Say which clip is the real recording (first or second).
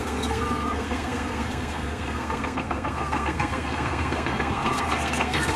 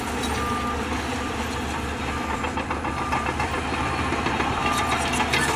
second